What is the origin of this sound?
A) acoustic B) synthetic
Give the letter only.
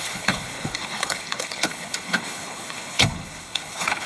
B